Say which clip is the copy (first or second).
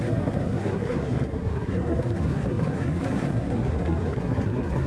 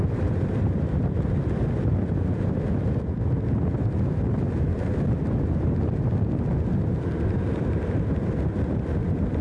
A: first